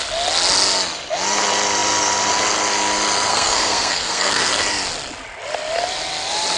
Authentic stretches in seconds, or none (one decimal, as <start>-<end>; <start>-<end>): 0.0-3.3; 4.5-6.6